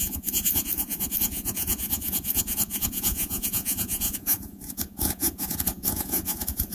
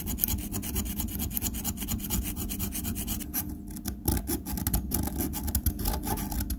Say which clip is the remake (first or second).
first